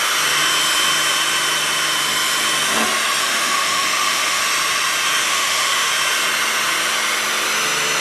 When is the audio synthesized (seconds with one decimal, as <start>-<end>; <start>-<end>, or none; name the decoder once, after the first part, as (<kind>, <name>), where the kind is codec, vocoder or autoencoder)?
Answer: 3.2-4.4 (autoencoder, DAC-VAE); 5.2-5.9